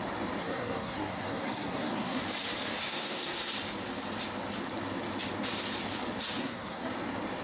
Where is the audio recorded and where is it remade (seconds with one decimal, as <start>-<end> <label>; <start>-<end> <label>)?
0.0-0.4 recorded; 0.4-2.2 remade; 2.2-2.8 recorded; 2.8-3.5 remade; 3.5-6.4 recorded; 6.4-6.9 remade; 6.9-7.4 recorded